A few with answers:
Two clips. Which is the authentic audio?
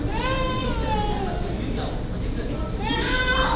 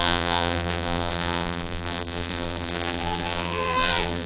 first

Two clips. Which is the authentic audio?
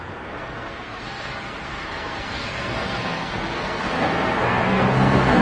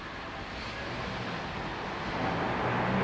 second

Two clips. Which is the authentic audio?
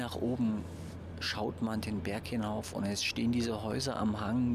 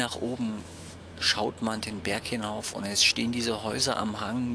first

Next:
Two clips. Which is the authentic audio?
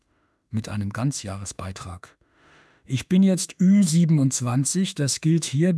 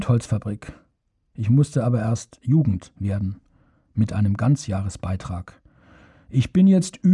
second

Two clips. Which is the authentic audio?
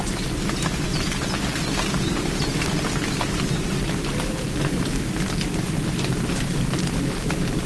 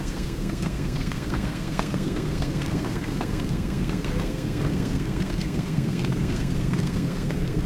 first